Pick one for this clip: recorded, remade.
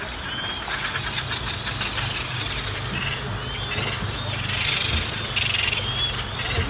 recorded